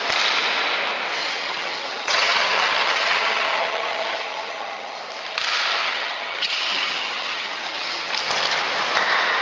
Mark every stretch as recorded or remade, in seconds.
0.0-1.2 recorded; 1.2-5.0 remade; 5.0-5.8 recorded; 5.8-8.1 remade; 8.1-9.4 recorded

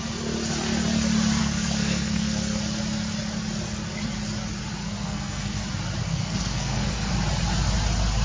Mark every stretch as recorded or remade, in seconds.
0.0-1.4 recorded; 1.4-2.6 remade; 2.6-4.8 recorded; 4.8-5.6 remade; 5.6-6.0 recorded; 6.0-7.1 remade; 7.1-8.2 recorded

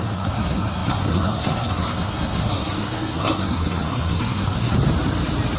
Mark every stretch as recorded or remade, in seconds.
0.0-4.7 remade; 4.7-5.6 recorded

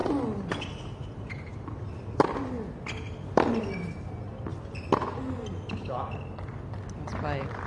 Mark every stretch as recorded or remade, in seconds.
0.0-7.7 recorded